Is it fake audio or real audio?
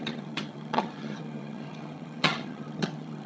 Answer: fake